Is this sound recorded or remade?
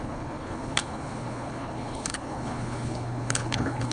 remade